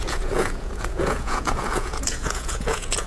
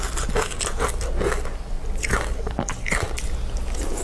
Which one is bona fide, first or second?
second